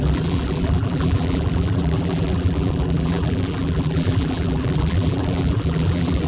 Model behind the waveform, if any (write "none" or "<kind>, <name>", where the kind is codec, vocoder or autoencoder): vocoder, BigVGAN v2